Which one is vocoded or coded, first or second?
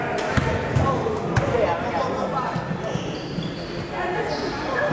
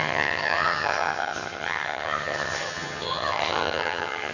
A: second